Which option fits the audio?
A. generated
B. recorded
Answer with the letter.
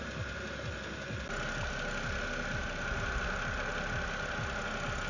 B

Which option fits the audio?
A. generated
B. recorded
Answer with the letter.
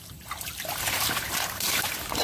A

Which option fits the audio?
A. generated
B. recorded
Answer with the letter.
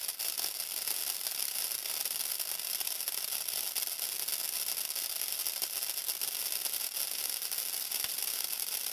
B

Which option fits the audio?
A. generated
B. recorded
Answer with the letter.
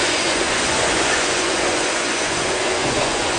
A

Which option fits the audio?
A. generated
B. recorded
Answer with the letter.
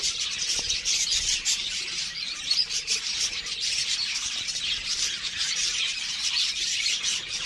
A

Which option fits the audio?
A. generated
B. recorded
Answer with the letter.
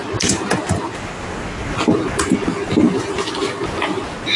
B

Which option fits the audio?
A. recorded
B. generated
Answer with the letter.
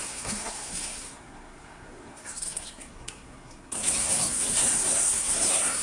B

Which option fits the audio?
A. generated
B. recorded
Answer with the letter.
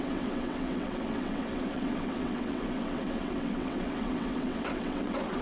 A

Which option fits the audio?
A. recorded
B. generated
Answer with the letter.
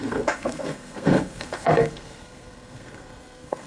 B